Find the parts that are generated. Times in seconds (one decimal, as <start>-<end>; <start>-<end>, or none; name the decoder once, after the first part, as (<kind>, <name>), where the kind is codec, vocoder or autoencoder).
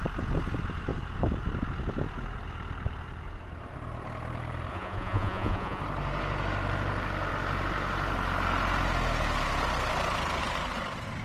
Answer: 4.7-5.8 (vocoder, Vocos)